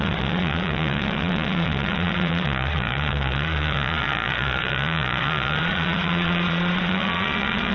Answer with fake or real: fake